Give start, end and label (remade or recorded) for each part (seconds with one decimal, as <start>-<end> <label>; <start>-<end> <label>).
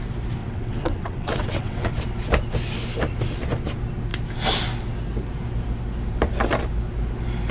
0.0-0.4 recorded; 0.4-1.9 remade; 1.9-7.5 recorded